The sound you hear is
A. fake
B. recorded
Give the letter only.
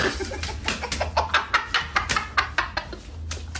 B